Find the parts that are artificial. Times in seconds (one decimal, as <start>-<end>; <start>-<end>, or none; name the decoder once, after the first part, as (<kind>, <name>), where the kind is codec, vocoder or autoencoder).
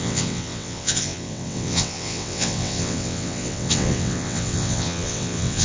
0.0-5.6 (vocoder, WaveNeXt)